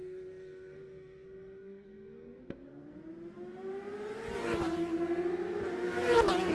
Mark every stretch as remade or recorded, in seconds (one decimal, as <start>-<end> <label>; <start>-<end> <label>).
0.0-3.0 remade; 3.0-6.5 recorded